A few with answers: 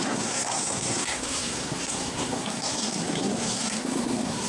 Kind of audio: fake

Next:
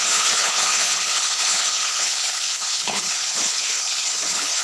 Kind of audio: fake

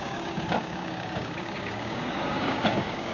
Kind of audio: fake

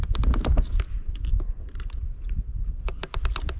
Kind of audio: real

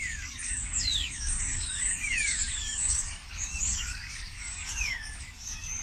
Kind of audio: fake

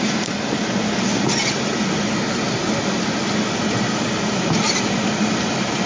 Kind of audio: real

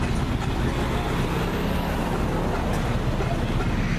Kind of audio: real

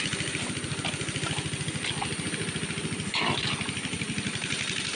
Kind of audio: real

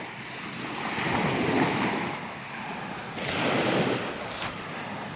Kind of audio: real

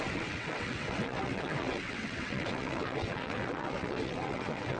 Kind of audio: fake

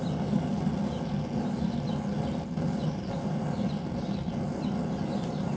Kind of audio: real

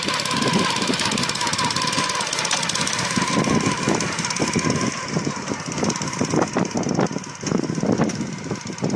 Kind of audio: real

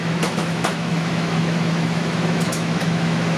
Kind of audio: fake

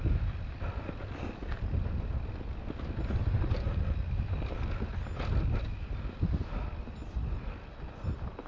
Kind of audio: real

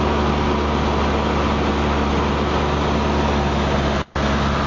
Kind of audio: real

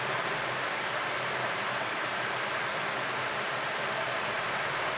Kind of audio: real